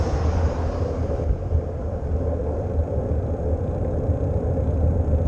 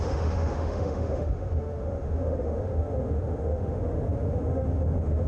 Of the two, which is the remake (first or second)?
second